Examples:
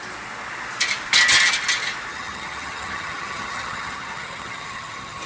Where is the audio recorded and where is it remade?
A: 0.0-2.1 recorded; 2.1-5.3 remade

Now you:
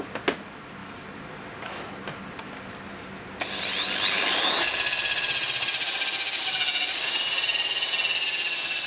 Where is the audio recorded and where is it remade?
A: 0.0-8.9 recorded

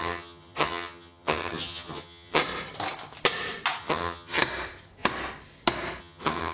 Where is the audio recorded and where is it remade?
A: 0.0-2.4 remade; 2.4-3.8 recorded; 3.8-4.4 remade; 4.4-6.0 recorded; 6.0-6.5 remade

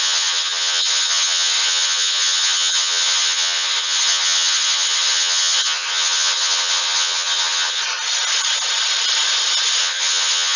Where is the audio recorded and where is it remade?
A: 0.0-7.8 remade; 7.8-9.8 recorded; 9.8-10.6 remade

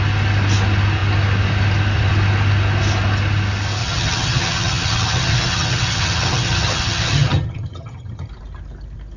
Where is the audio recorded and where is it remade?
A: 0.0-3.8 recorded; 3.8-8.3 remade; 8.3-9.2 recorded

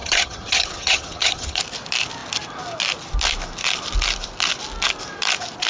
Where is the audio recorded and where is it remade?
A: 0.0-1.6 remade; 1.6-5.7 recorded

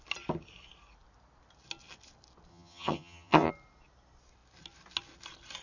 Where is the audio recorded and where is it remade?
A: 0.0-2.5 recorded; 2.5-3.5 remade; 3.5-5.6 recorded